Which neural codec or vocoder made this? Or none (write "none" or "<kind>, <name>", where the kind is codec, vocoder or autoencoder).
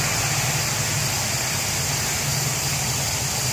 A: none